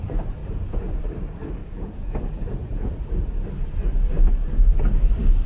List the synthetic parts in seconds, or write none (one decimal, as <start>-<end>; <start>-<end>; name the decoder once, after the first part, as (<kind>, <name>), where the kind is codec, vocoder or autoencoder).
0.4-1.0 (vocoder, Vocos); 1.6-2.9